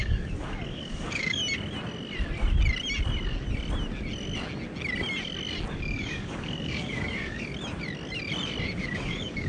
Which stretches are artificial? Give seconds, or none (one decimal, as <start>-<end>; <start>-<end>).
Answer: 0.0-1.4; 5.7-7.5; 8.8-9.5